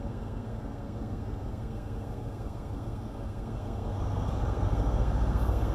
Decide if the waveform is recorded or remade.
remade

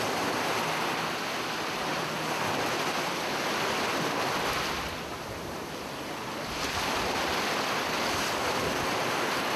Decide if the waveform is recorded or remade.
recorded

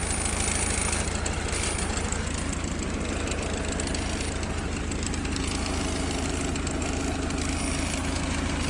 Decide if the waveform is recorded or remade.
recorded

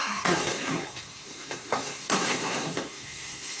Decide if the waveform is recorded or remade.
remade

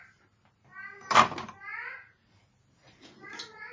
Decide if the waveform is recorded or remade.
recorded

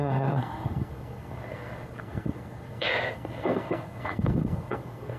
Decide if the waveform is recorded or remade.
remade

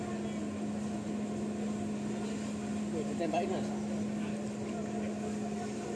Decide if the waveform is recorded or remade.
recorded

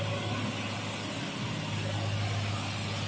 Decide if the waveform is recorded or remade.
recorded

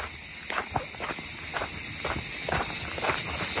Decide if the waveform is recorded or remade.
recorded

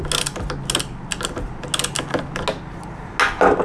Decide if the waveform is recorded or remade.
recorded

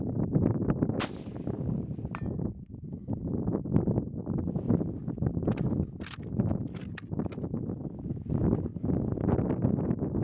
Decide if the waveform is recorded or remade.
recorded